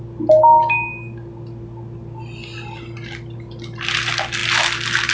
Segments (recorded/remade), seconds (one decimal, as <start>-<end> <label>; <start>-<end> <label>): 0.0-5.1 recorded